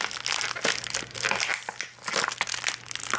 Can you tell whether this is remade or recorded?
recorded